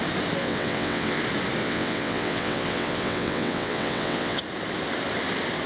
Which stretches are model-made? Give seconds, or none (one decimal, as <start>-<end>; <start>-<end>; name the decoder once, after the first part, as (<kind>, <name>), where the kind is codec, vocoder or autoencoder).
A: 0.4-1.2 (vocoder, WaveNeXt); 1.6-4.4